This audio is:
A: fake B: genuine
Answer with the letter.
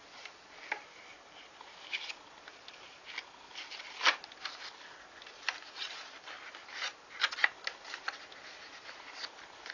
B